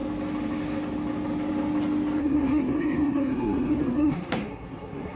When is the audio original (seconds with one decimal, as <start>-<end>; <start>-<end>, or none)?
0.0-2.2

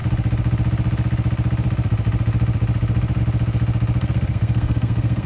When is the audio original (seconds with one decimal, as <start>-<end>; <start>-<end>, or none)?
0.0-4.0

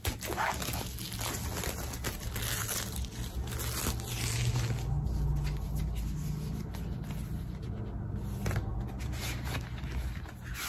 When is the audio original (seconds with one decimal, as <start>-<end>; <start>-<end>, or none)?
0.0-10.7

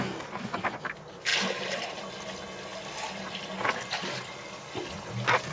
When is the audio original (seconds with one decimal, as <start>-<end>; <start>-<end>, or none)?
0.0-5.5

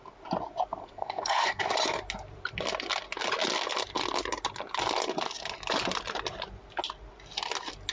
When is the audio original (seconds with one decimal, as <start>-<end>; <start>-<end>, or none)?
0.0-0.8; 1.6-7.9